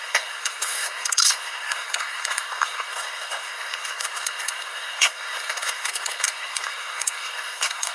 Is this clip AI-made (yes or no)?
yes